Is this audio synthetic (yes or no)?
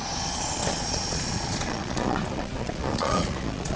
yes